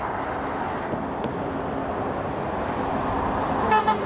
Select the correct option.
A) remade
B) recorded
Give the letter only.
B